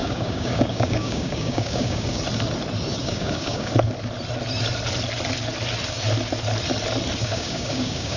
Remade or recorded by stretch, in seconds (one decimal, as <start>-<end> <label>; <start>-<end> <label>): 0.0-2.2 remade; 2.2-3.0 recorded; 3.0-3.7 remade; 3.7-7.2 recorded; 7.2-8.2 remade